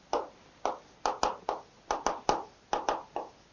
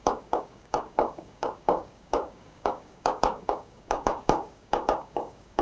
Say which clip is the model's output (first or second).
second